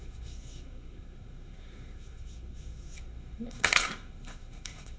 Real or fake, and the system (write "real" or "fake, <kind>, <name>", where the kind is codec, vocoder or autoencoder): fake, codec, SNAC